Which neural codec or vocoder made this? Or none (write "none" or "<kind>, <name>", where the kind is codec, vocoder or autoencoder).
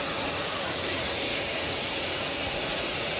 vocoder, Vocos